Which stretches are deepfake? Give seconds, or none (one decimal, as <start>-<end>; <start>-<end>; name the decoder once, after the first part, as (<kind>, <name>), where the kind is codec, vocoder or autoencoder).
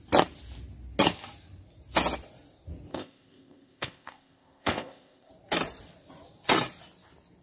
2.9-5.3 (codec, ZipCodec)